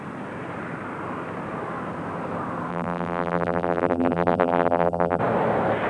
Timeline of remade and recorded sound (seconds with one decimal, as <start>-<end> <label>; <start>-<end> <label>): 0.0-2.7 recorded; 2.7-5.2 remade; 5.2-5.9 recorded